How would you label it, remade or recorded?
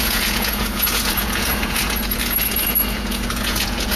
remade